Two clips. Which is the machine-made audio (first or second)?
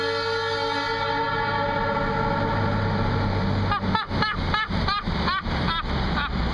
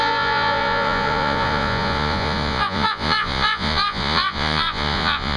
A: second